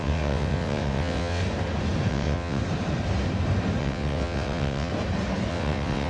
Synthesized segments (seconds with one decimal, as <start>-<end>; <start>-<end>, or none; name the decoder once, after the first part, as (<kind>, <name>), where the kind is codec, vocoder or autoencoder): 0.0-1.4 (vocoder, WaveNeXt); 2.1-2.6; 3.8-4.9; 5.5-6.1